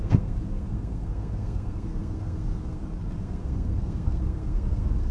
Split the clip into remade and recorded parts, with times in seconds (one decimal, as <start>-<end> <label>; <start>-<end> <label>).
0.0-5.1 remade